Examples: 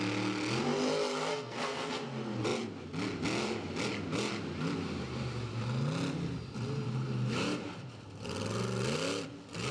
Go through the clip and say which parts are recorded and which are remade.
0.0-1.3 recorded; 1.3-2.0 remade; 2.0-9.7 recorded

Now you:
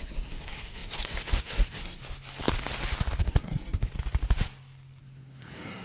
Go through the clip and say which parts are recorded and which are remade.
0.0-2.0 remade; 2.0-3.2 recorded; 3.2-3.9 remade; 3.9-5.0 recorded; 5.0-5.8 remade

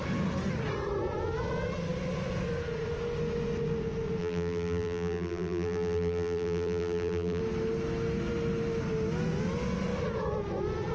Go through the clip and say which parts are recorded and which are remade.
0.0-4.2 recorded; 4.2-7.4 remade; 7.4-10.9 recorded

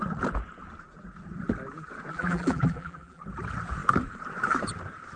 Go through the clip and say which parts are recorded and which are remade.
0.0-2.1 recorded; 2.1-3.2 remade; 3.2-5.2 recorded